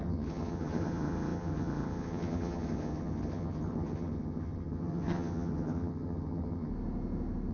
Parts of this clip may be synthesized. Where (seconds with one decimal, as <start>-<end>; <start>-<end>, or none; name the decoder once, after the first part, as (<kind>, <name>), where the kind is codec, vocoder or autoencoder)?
0.0-6.7 (vocoder, HiFi-GAN)